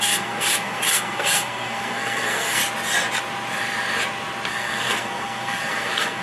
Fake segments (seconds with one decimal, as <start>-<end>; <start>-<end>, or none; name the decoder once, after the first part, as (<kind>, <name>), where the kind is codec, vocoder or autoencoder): 0.0-2.6 (codec, SNAC); 4.5-6.2